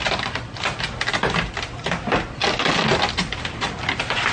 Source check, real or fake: real